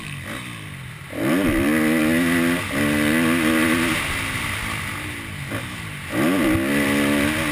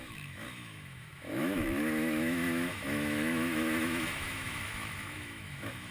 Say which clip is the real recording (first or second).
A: first